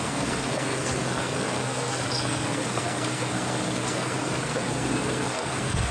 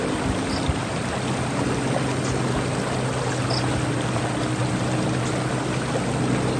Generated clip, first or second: first